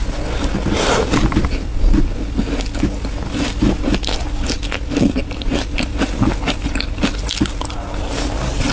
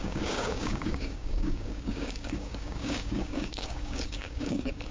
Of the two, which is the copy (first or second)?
second